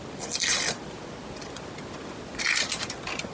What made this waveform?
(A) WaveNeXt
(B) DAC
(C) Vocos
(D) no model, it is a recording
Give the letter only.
D